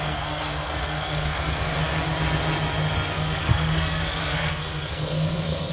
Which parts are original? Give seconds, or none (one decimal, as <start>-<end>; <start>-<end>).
1.8-3.1